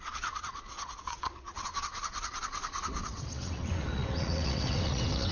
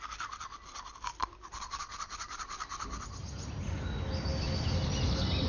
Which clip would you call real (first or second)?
second